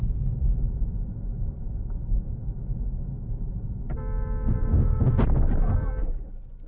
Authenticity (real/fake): real